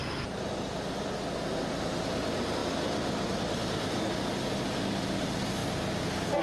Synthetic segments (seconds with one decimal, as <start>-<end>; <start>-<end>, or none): none